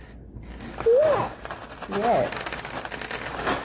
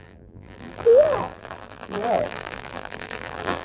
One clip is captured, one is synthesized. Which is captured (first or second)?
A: first